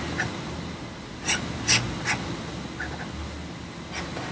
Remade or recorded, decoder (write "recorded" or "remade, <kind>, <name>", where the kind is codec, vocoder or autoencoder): recorded